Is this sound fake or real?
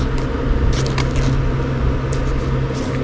real